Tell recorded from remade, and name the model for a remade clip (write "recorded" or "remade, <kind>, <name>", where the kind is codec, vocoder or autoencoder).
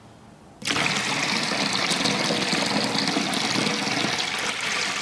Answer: recorded